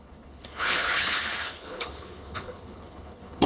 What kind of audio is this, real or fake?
fake